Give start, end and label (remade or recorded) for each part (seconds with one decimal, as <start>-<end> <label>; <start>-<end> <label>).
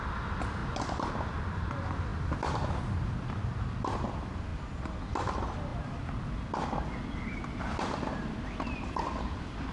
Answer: 0.0-9.7 recorded